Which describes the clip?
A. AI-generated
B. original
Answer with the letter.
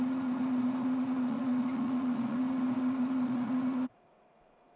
A